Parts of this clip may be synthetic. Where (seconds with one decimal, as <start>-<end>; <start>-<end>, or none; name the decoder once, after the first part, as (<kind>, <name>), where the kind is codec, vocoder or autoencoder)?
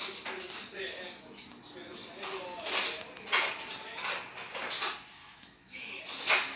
5.2-6.0 (autoencoder, DAC-VAE)